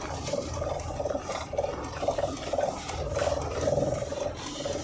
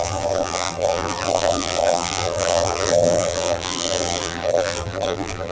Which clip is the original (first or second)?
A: first